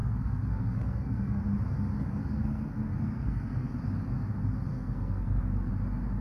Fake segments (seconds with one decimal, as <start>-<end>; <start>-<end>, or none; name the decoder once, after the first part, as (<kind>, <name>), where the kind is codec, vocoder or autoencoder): 0.0-1.4 (codec, SNAC); 2.2-3.7; 4.7-5.7